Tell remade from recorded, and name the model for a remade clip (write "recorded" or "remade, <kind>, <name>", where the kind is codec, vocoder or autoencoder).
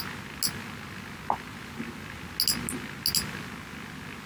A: recorded